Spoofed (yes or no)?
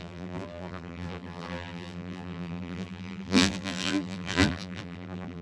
yes